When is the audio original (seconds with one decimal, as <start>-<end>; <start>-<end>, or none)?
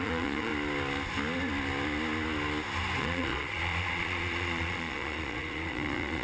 0.5-3.0